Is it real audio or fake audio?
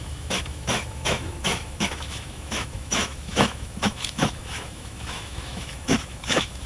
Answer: fake